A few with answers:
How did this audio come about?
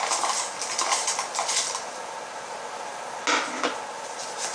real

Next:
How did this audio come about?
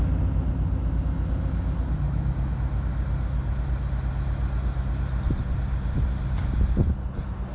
real